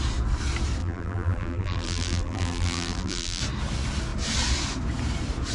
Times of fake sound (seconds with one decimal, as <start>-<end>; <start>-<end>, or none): 0.8-3.4